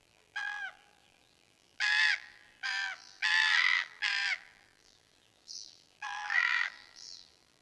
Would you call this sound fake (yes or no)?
yes